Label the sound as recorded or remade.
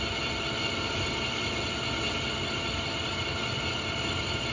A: recorded